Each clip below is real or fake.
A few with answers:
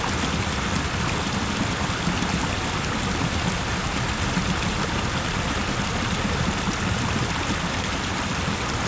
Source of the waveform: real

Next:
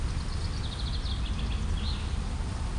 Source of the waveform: real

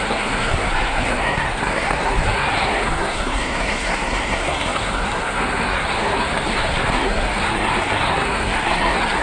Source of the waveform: fake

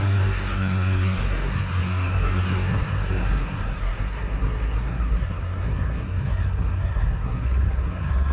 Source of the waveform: fake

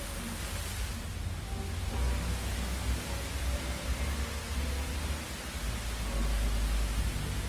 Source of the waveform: real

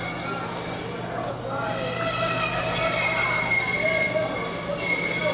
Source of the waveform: real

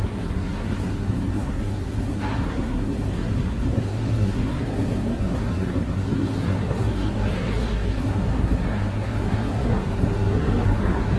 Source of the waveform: fake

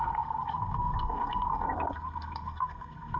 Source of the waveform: fake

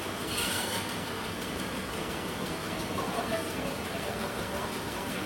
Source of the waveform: fake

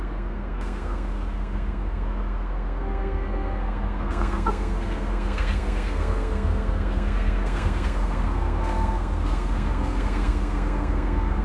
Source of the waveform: fake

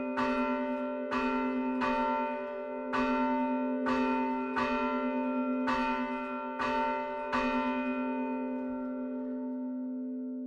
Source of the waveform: real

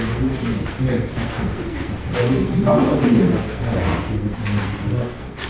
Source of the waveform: fake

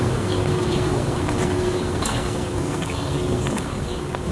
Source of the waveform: fake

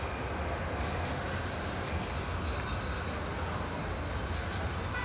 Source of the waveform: real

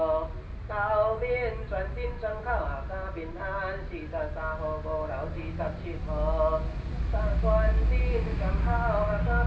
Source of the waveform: real